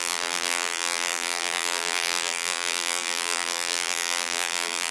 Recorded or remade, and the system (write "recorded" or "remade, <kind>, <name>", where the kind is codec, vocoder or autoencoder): remade, vocoder, BigVGAN v2